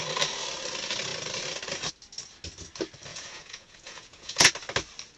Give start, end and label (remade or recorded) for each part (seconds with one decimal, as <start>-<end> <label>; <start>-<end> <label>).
0.0-3.1 recorded; 3.1-4.5 remade; 4.5-5.2 recorded